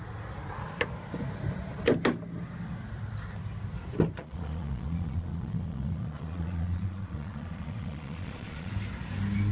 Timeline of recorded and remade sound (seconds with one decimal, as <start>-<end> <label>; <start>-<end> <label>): 0.0-4.2 recorded; 4.2-8.7 remade; 8.7-9.5 recorded